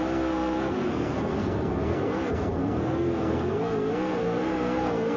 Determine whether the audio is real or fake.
fake